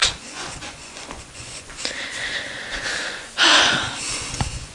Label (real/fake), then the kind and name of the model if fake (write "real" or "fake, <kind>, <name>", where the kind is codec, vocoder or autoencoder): fake, vocoder, Vocos